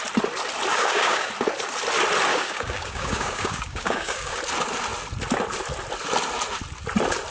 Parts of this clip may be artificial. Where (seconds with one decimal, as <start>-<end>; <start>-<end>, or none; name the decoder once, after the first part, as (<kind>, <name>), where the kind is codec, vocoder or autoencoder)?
0.7-1.3 (codec, DAC); 2.3-4.4